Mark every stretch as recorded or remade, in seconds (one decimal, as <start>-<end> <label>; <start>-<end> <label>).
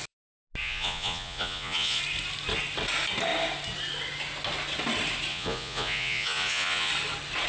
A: 0.0-0.6 recorded; 0.6-2.0 remade; 2.0-5.3 recorded; 5.3-6.9 remade; 6.9-7.5 recorded